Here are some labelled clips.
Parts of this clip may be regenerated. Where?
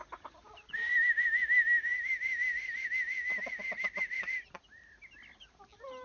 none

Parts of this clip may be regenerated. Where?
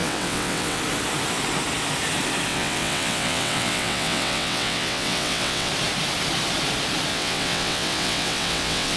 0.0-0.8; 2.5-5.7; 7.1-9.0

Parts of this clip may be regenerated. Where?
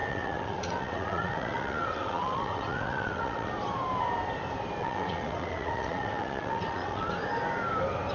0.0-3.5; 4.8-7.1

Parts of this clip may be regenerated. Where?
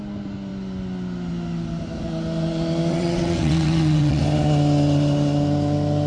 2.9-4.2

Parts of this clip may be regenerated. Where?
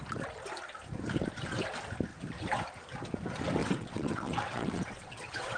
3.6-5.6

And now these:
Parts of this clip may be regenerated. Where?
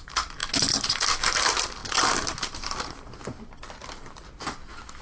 none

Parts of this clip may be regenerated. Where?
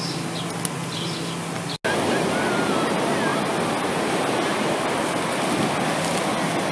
none